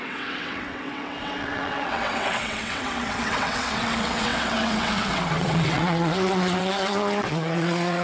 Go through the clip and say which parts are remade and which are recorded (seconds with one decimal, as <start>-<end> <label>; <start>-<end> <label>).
0.0-8.0 remade